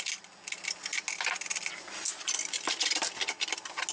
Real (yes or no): yes